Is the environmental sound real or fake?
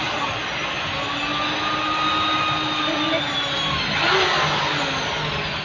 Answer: real